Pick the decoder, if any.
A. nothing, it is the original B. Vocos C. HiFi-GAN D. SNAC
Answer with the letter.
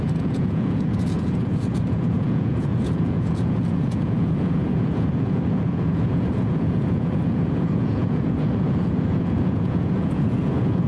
B